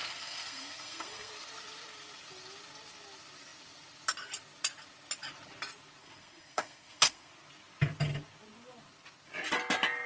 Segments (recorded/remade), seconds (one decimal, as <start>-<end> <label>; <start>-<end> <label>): 0.0-1.3 remade; 1.3-6.0 recorded; 6.0-7.3 remade; 7.3-10.1 recorded